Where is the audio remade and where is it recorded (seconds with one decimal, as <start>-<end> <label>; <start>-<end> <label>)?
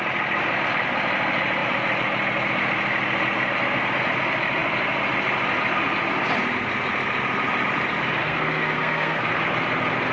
0.0-8.2 recorded; 8.2-9.3 remade; 9.3-10.1 recorded